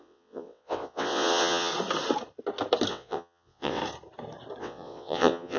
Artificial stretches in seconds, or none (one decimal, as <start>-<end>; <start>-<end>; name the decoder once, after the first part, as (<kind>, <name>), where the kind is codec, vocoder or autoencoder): 0.0-1.7 (vocoder, WaveNeXt); 2.9-3.8; 4.6-5.6